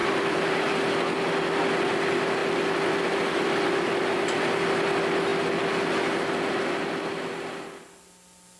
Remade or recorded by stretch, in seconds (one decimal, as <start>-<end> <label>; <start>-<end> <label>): 0.0-0.7 remade; 0.7-8.6 recorded